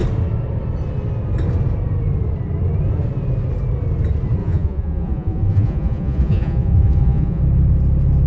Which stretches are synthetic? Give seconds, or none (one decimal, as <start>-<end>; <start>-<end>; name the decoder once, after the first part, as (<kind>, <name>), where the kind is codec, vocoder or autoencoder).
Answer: 4.4-7.4 (vocoder, Vocos)